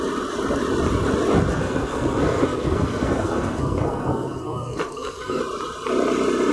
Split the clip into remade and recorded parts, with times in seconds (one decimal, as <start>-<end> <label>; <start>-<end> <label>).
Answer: 0.0-1.5 recorded; 1.5-5.4 remade; 5.4-6.5 recorded